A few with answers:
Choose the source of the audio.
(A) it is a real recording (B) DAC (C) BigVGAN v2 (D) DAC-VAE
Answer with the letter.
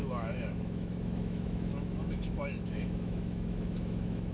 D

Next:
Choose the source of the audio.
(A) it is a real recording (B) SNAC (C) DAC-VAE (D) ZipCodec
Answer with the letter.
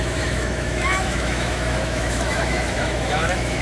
C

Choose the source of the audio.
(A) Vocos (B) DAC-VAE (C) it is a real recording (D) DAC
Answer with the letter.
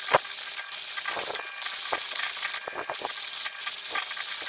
C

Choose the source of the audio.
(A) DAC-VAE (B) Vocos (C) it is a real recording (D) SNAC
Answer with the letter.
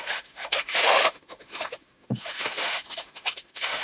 A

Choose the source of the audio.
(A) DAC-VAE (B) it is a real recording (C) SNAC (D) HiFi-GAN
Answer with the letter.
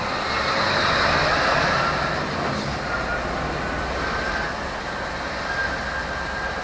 B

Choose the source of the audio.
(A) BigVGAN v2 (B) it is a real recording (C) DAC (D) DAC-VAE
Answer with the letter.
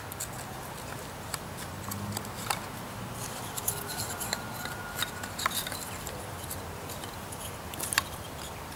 B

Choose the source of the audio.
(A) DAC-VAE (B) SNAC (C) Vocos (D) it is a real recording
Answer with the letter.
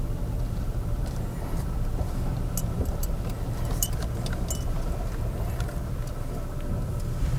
D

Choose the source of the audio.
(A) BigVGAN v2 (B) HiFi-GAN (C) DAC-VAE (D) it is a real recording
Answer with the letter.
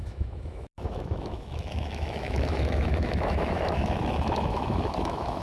C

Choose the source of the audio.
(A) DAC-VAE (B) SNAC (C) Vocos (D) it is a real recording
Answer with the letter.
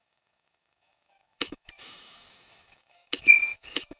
A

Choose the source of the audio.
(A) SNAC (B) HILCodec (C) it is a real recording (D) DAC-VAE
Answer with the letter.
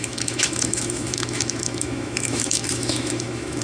D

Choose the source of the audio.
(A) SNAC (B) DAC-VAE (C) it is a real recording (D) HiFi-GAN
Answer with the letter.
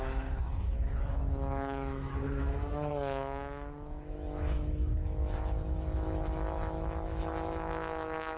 B